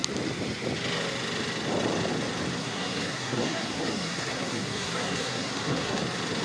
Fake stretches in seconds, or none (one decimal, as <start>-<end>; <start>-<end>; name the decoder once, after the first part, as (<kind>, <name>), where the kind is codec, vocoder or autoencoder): 2.6-6.0 (codec, SNAC)

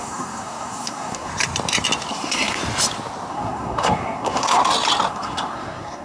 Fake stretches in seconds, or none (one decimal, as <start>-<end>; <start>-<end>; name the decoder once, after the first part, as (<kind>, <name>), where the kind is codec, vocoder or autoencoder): 0.0-1.3 (codec, SNAC); 2.1-2.6; 3.3-4.6; 5.1-6.0

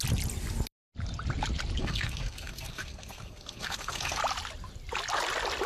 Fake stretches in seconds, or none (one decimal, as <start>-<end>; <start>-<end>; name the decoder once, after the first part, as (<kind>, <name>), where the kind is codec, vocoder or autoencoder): 1.8-4.2 (codec, SNAC)

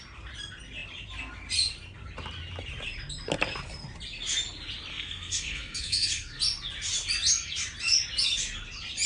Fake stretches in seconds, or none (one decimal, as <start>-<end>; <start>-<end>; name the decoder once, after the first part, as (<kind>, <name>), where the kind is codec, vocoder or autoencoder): 4.9-6.4 (codec, SNAC)